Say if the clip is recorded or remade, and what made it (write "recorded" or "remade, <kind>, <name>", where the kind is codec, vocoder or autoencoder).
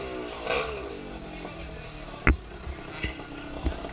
recorded